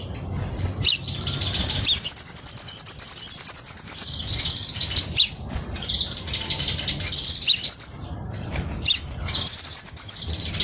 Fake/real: real